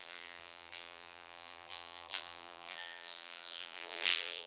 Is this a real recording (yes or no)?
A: no